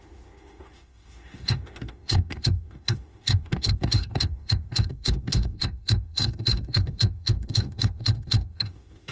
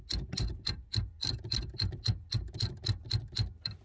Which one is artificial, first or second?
first